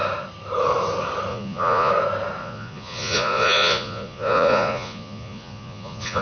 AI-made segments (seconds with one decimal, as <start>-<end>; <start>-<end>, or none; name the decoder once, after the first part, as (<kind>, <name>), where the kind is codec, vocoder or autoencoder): 1.3-1.9 (vocoder, Vocos); 2.4-6.2